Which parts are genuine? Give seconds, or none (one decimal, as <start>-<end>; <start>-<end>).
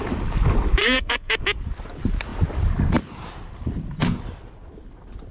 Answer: 0.0-0.8; 1.4-5.3